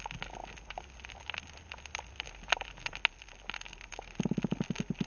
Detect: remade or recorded recorded